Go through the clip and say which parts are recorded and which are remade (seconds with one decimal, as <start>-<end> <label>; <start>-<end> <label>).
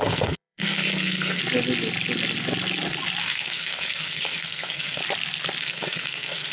0.0-1.4 remade; 1.4-3.2 recorded; 3.2-5.0 remade; 5.0-5.6 recorded; 5.6-6.5 remade